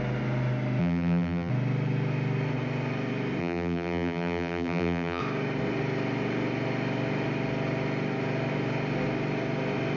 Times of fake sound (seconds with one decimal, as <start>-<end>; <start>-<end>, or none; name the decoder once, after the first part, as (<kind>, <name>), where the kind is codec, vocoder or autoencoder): 0.8-1.5 (vocoder, BigVGAN v2); 3.4-5.2